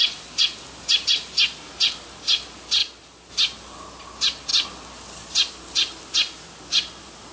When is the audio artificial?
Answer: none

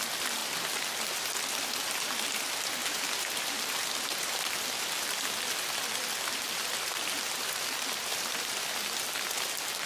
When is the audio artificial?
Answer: 0.4-1.7; 2.8-7.6; 8.1-8.7

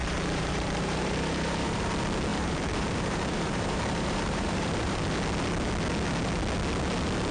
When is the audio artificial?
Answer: 0.0-1.9; 2.3-5.0